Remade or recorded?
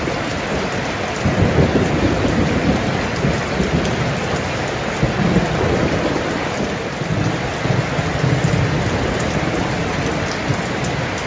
recorded